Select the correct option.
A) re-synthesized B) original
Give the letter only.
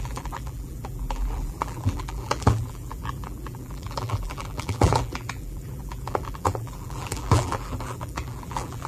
A